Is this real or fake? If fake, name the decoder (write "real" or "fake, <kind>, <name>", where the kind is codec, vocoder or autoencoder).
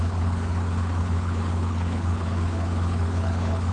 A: fake, codec, HILCodec